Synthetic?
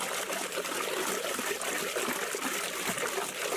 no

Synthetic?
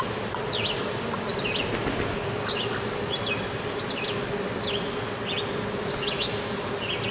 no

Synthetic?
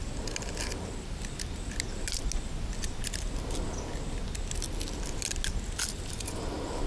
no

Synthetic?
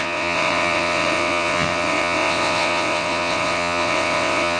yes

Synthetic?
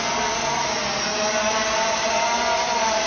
no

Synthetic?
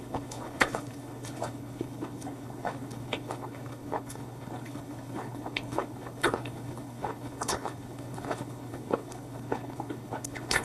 yes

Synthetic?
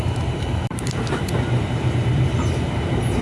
yes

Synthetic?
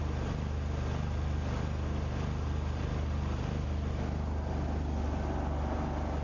no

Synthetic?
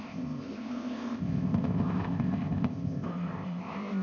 yes